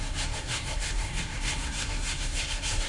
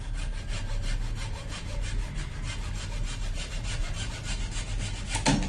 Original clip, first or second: second